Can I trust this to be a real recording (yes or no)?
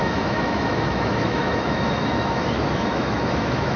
no